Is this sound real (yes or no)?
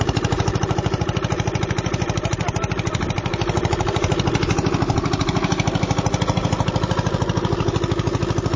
yes